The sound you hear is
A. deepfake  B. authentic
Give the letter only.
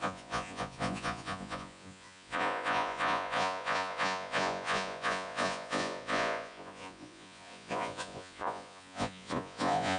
A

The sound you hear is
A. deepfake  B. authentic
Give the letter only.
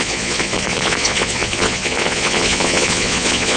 A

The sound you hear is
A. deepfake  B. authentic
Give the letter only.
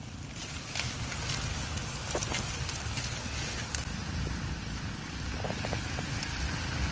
B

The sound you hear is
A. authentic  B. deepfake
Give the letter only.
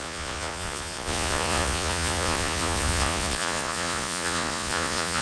B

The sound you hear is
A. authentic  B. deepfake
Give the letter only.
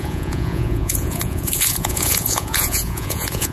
B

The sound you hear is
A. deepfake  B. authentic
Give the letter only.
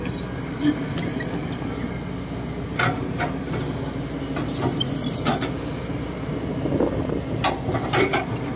B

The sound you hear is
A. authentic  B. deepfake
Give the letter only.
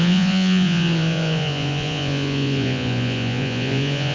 B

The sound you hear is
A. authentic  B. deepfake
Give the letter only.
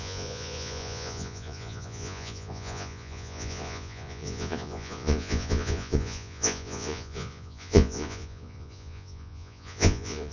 B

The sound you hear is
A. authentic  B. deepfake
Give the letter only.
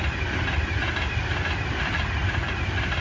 A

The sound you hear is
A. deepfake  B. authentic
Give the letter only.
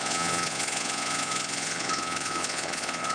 A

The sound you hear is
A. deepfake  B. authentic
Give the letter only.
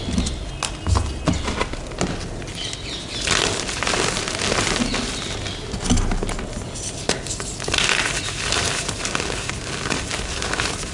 B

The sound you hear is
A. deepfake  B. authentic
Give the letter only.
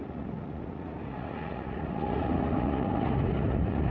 A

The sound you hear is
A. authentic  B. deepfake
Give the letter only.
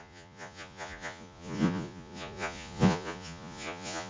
B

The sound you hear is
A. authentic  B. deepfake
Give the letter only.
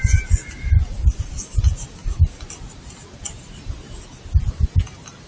A